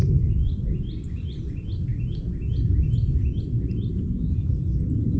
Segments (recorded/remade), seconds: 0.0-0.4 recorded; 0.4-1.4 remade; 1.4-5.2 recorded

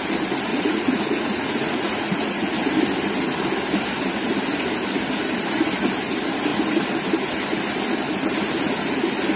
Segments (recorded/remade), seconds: 0.0-0.5 recorded; 0.5-2.5 remade; 2.5-9.4 recorded

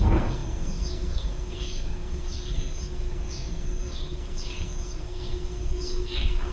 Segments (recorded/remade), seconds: 0.0-6.5 remade

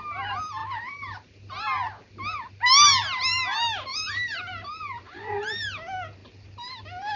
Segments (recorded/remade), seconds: 0.0-3.9 recorded; 3.9-5.4 remade; 5.4-6.2 recorded; 6.2-6.8 remade; 6.8-7.2 recorded

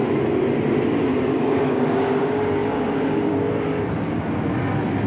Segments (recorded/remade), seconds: 0.0-1.1 recorded; 1.1-3.5 remade; 3.5-5.1 recorded

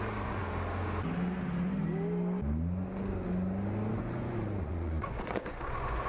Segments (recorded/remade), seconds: 0.0-0.4 remade; 0.4-3.9 recorded; 3.9-6.1 remade

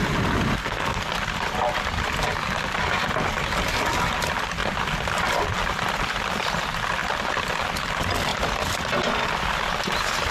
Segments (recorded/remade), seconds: 0.0-0.6 recorded; 0.6-1.1 remade; 1.1-10.3 recorded

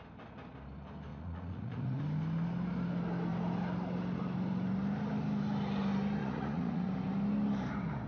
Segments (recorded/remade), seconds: 0.0-1.1 recorded; 1.1-2.0 remade; 2.0-6.2 recorded; 6.2-6.9 remade; 6.9-8.1 recorded